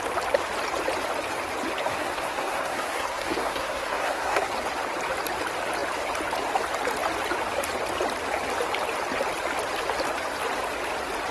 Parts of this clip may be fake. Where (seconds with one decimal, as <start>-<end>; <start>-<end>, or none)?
1.9-4.5